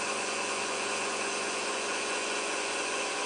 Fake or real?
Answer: fake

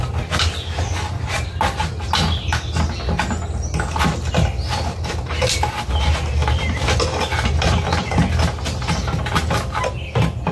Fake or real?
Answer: real